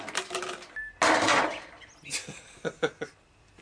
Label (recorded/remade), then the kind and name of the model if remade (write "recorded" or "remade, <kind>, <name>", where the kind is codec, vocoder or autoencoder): recorded